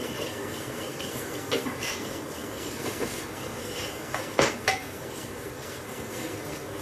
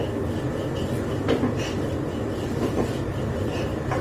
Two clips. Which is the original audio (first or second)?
second